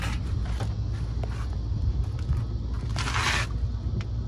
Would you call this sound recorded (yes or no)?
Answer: yes